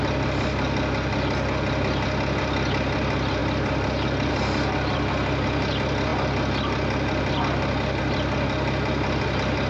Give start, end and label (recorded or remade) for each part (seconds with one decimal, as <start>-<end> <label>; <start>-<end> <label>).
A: 0.0-3.4 recorded; 3.4-4.3 remade; 4.3-9.7 recorded